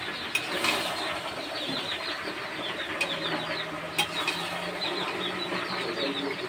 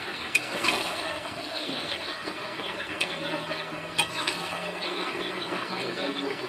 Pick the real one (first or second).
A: first